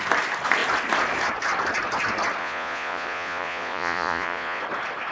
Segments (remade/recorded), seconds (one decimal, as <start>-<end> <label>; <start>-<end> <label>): 0.0-2.4 recorded; 2.4-4.6 remade; 4.6-5.1 recorded